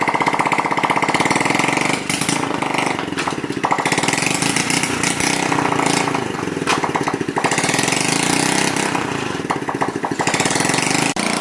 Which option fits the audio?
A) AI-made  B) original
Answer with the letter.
B